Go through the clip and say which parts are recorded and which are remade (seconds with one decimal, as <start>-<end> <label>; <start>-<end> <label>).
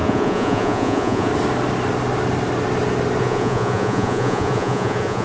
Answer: 0.0-1.3 remade; 1.3-3.2 recorded; 3.2-5.2 remade